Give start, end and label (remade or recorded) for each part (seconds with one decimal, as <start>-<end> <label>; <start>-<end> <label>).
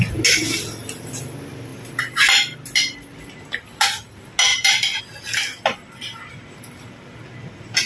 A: 0.0-4.5 recorded; 4.5-5.0 remade; 5.0-7.9 recorded